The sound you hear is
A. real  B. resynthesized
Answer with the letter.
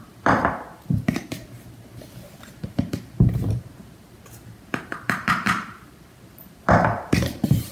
B